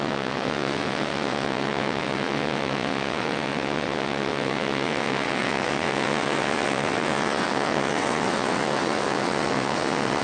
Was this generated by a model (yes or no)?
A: yes